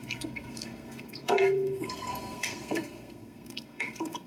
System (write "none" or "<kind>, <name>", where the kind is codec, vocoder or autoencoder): codec, SNAC